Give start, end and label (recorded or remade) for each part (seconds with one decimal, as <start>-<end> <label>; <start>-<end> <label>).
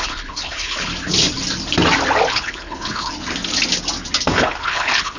0.0-0.9 remade; 0.9-2.3 recorded; 2.3-3.1 remade; 3.1-4.3 recorded; 4.3-5.2 remade